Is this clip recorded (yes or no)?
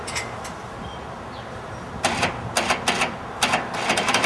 yes